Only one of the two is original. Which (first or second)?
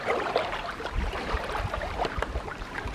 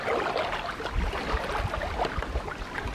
second